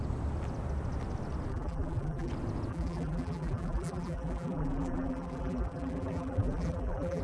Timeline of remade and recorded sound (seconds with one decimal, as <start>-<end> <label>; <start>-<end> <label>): 0.0-1.5 recorded; 1.5-2.3 remade; 2.3-2.7 recorded; 2.7-7.2 remade